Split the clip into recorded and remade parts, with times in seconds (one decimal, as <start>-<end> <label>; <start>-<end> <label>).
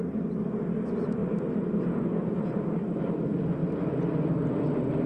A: 0.0-5.1 recorded